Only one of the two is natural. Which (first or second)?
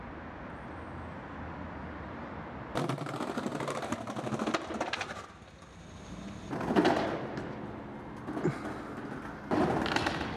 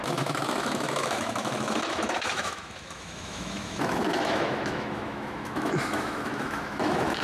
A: first